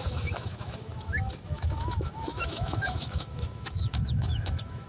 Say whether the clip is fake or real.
fake